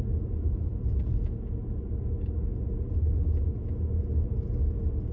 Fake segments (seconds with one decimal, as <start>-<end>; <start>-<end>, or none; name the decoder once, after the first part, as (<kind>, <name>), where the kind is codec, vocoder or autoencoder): none